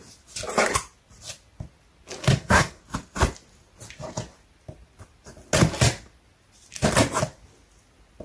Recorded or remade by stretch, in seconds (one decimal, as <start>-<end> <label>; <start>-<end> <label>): 0.0-2.2 recorded; 2.2-2.8 remade; 2.8-8.2 recorded